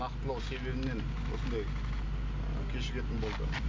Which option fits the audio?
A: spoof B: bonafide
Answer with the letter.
B